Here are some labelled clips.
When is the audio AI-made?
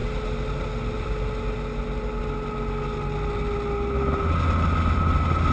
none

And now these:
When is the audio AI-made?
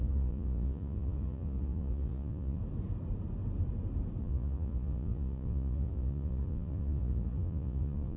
0.0-2.6 (vocoder, Vocos); 4.2-8.2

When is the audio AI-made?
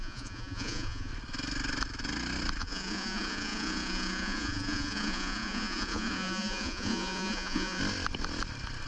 0.0-1.1 (vocoder, Vocos); 2.6-7.8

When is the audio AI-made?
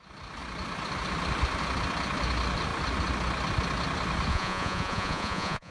4.3-5.7 (vocoder, Vocos)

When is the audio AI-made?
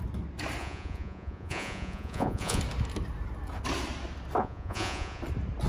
0.6-2.6 (vocoder, Vocos); 4.4-5.2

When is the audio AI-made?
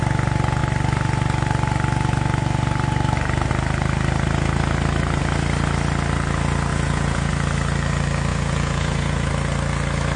6.7-7.3 (vocoder, Vocos); 8.3-9.3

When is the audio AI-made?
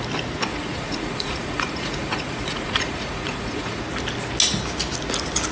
0.5-3.8 (vocoder, Vocos)